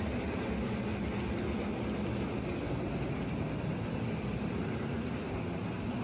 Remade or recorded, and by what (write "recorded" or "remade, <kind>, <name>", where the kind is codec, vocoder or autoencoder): recorded